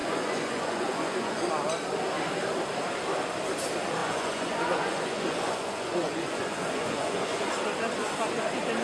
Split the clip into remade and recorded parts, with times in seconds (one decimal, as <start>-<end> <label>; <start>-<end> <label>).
0.0-1.4 remade; 1.4-4.0 recorded; 4.0-7.5 remade; 7.5-8.8 recorded